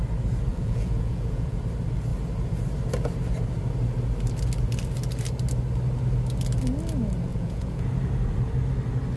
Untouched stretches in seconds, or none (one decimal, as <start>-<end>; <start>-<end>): 0.0-0.5; 1.6-7.3; 7.9-9.2